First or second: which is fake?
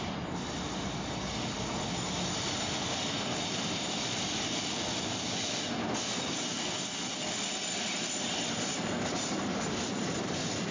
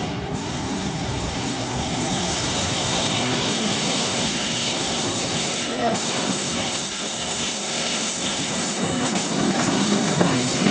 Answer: second